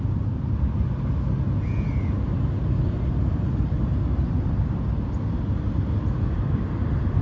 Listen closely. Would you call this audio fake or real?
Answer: real